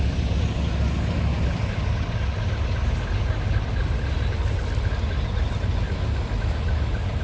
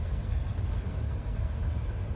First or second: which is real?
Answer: first